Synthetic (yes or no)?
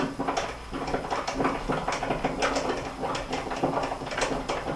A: no